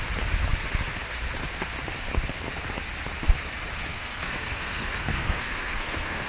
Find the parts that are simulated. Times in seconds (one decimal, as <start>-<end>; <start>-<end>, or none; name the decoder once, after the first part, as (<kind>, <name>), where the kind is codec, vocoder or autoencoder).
3.9-6.3 (codec, SNAC)